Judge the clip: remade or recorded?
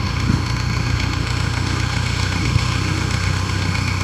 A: remade